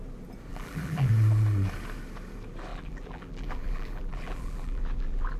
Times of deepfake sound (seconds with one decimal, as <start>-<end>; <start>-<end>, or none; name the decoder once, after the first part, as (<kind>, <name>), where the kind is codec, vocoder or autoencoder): 0.5-1.1 (vocoder, BigVGAN v2); 2.7-5.4